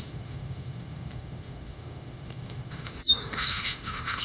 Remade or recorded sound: remade